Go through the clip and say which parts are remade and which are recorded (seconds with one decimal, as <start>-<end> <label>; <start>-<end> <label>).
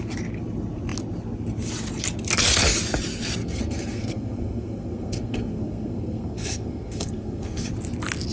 0.0-3.4 recorded; 3.4-7.7 remade; 7.7-8.3 recorded